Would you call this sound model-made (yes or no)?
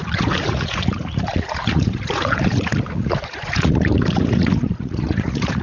yes